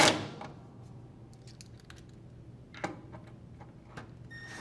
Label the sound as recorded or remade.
recorded